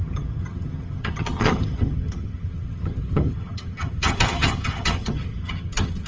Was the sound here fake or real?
fake